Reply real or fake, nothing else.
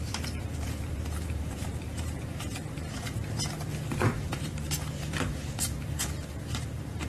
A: fake